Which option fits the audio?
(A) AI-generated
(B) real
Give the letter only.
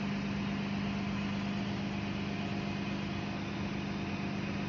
B